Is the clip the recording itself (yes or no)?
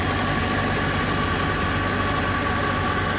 yes